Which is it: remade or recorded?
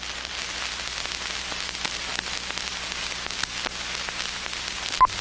recorded